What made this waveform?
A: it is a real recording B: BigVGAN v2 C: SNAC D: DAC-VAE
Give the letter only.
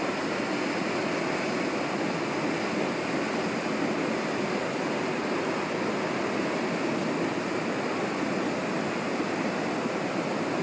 A